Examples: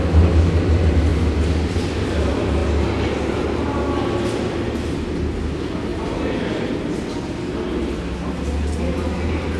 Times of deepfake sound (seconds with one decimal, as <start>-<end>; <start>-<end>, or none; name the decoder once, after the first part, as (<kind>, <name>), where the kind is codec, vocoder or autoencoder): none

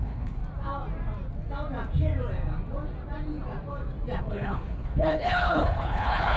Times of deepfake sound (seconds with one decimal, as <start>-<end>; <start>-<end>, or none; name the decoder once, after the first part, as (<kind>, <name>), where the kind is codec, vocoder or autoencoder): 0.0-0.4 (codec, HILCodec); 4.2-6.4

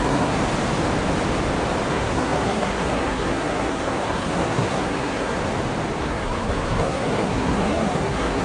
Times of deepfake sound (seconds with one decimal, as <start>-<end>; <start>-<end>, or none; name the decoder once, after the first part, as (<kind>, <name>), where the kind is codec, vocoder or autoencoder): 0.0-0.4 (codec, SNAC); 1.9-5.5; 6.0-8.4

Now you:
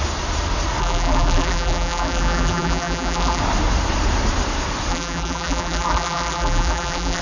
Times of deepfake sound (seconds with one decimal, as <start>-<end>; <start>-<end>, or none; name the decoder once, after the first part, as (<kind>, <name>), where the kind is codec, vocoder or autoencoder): 0.8-3.4 (vocoder, BigVGAN v2); 4.9-7.2

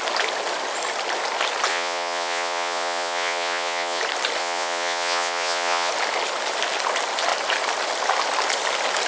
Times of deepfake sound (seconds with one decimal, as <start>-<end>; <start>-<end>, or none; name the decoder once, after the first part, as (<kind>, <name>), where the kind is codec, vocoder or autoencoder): 1.7-4.0 (vocoder, Vocos); 4.4-5.9